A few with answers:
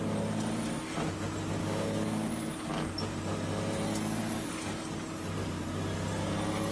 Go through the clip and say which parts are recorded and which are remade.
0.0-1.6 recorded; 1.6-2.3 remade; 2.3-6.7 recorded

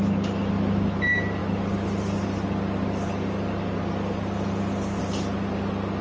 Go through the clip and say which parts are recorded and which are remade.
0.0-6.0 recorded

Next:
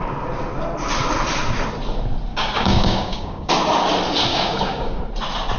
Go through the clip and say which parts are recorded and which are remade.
0.0-2.3 recorded; 2.3-3.5 remade; 3.5-4.3 recorded; 4.3-5.0 remade; 5.0-5.6 recorded

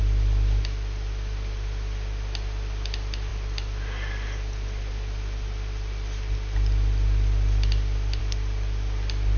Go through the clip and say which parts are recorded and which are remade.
0.0-9.4 recorded

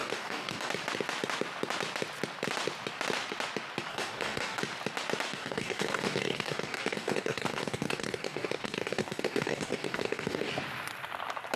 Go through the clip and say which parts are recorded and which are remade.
0.0-0.7 remade; 0.7-3.9 recorded; 3.9-4.6 remade; 4.6-5.3 recorded; 5.3-10.5 remade; 10.5-11.6 recorded

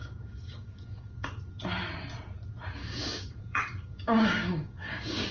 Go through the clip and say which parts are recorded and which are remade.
0.0-1.4 remade; 1.4-2.8 recorded; 2.8-5.3 remade

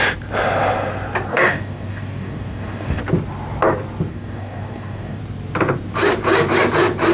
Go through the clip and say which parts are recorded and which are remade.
0.0-1.3 recorded; 1.3-3.0 remade; 3.0-4.1 recorded; 4.1-5.2 remade; 5.2-7.1 recorded

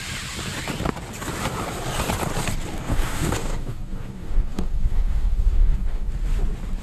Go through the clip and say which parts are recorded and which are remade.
0.0-2.7 recorded; 2.7-6.1 remade; 6.1-6.8 recorded